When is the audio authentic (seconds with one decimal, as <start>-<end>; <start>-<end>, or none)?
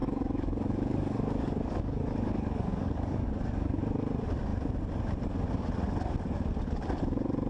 3.8-7.5